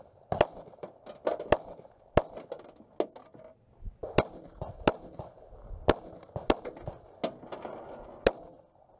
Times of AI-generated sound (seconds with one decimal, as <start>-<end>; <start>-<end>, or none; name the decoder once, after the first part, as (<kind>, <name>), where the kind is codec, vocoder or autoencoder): none